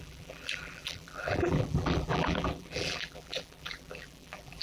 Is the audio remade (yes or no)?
yes